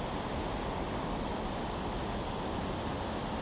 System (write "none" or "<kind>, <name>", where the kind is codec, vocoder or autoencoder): none